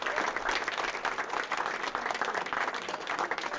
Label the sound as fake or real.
real